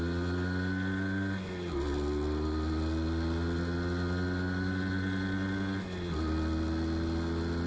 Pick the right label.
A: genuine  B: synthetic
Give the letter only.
A